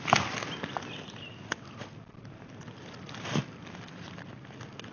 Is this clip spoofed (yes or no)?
no